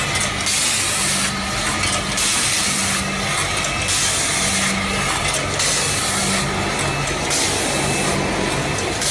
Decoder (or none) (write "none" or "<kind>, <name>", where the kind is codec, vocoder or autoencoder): none